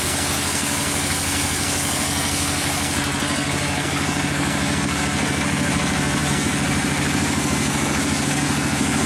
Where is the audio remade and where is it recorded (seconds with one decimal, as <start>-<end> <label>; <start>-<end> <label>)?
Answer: 0.0-9.1 remade